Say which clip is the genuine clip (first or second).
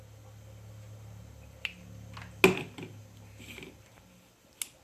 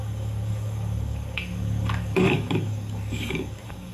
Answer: first